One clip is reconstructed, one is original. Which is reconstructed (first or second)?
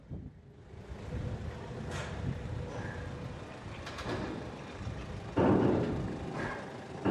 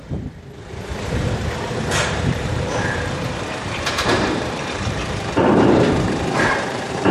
second